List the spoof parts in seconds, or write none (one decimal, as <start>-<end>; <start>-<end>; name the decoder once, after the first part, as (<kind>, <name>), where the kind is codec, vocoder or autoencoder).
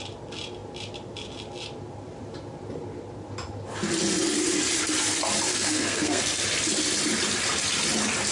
5.5-6.2 (codec, SNAC)